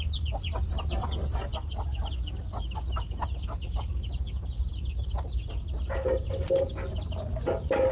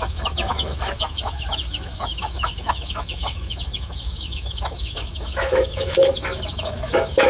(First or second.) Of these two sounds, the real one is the first